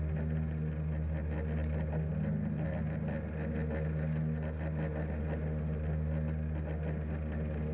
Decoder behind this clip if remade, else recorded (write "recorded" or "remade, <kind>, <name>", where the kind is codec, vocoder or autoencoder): recorded